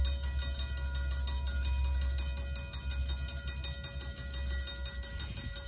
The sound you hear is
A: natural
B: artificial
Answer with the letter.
A